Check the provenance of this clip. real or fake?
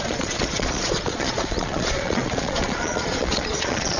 fake